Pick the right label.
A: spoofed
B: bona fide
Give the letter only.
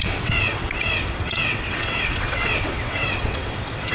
A